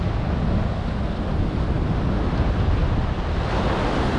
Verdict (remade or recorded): recorded